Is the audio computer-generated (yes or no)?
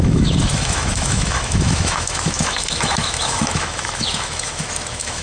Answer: yes